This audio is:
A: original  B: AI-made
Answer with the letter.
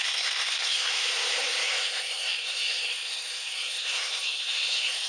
B